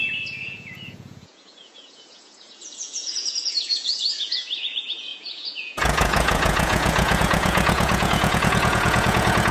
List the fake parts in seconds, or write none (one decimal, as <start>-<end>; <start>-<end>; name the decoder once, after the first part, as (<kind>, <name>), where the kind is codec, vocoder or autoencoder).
0.0-9.5 (vocoder, Vocos)